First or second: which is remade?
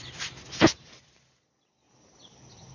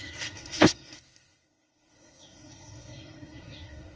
second